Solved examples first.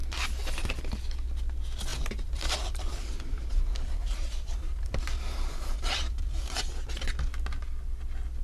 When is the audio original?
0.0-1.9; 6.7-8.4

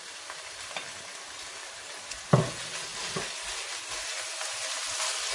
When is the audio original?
0.0-5.3

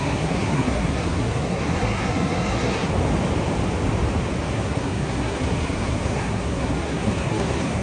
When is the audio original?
2.9-4.5

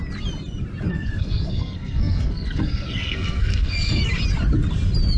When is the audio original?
0.0-0.9; 4.0-5.2

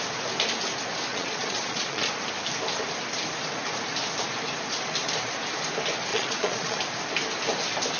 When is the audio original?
0.0-1.1; 2.1-6.1; 6.8-8.0